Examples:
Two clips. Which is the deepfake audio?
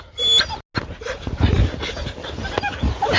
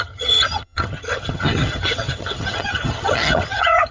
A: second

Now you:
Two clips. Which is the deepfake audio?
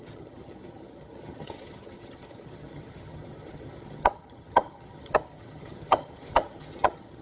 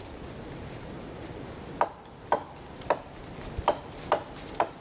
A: first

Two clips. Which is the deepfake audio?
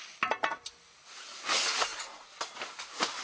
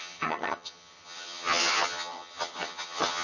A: second